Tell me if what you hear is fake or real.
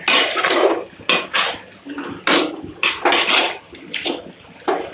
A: real